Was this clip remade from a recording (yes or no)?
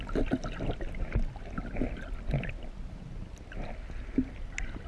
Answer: no